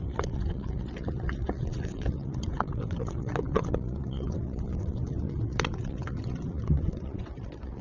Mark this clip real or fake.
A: fake